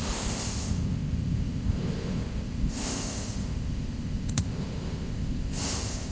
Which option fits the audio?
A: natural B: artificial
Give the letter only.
B